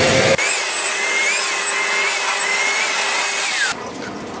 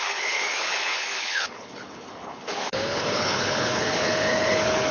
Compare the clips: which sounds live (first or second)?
first